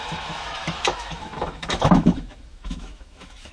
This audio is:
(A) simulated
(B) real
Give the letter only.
A